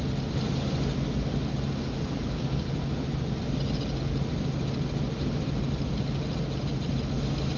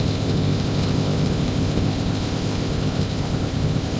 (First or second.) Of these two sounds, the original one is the first